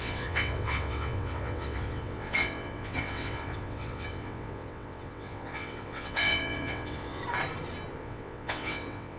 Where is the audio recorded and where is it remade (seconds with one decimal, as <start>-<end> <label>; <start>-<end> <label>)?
0.0-7.2 remade; 7.2-8.0 recorded; 8.0-9.2 remade